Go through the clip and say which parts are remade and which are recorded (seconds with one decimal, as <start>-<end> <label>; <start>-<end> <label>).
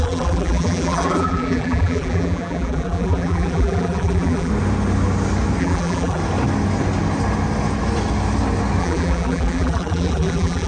0.0-4.5 remade; 4.5-5.6 recorded; 5.6-6.2 remade; 6.2-8.8 recorded; 8.8-10.7 remade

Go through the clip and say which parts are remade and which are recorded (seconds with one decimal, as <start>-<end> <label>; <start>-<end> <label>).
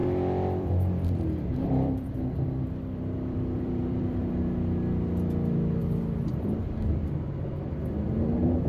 0.0-4.4 remade; 4.4-5.8 recorded; 5.8-7.0 remade; 7.0-8.7 recorded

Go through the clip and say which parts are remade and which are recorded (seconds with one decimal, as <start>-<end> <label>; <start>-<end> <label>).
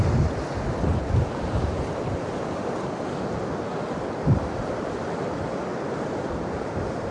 0.0-1.9 remade; 1.9-4.4 recorded; 4.4-7.1 remade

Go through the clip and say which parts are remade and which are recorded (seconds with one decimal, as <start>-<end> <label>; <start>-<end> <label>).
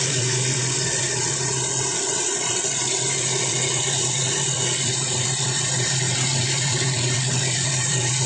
0.0-8.3 remade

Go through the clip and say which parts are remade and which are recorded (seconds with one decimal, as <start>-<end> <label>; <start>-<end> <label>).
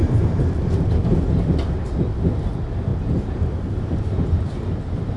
0.0-5.2 recorded